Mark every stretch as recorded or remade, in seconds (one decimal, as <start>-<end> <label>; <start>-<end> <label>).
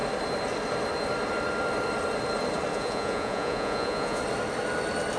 0.0-2.7 recorded; 2.7-4.2 remade; 4.2-5.2 recorded